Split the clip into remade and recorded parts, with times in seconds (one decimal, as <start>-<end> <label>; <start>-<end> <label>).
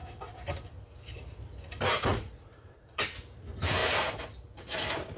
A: 0.0-2.1 recorded; 2.1-3.0 remade; 3.0-5.2 recorded